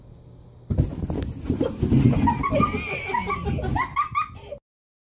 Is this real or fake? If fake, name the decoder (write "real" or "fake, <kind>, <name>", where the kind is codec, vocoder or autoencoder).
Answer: real